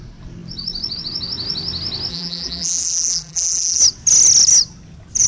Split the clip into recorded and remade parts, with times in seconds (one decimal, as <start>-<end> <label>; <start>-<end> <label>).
0.0-2.1 recorded; 2.1-3.8 remade; 3.8-5.3 recorded